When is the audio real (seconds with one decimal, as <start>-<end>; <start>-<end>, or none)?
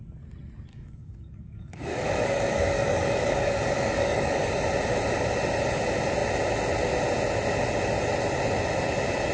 0.0-0.7; 4.5-9.3